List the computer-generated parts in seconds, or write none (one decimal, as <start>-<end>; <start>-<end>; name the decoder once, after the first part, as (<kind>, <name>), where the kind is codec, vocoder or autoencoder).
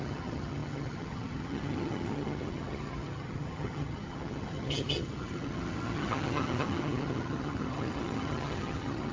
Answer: 0.0-9.1 (vocoder, HiFi-GAN)